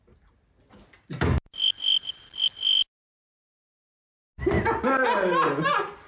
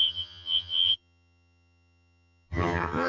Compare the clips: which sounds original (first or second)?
first